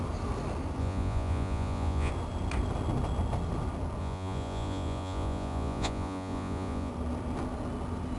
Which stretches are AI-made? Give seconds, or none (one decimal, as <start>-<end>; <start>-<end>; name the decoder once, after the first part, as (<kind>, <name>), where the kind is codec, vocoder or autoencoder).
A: 0.8-2.1 (vocoder, Vocos); 4.0-6.9